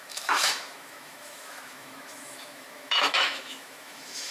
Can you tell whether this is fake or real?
fake